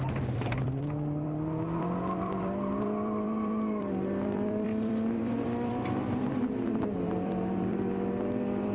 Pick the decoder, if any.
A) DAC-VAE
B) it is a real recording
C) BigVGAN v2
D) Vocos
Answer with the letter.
C